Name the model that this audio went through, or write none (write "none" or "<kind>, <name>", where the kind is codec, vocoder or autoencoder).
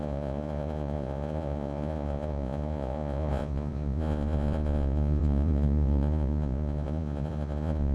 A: vocoder, Vocos